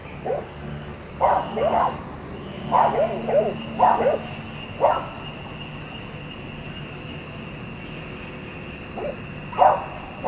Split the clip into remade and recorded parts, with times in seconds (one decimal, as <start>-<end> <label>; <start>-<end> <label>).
0.0-2.0 remade; 2.0-10.3 recorded